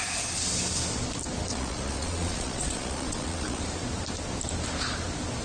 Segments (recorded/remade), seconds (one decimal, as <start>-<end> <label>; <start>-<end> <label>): 0.0-1.5 recorded; 1.5-3.6 remade; 3.6-5.4 recorded